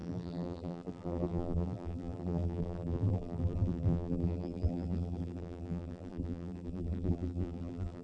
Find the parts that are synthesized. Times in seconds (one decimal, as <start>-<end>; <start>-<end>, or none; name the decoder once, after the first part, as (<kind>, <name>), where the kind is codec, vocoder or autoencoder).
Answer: 0.0-8.0 (vocoder, BigVGAN v2)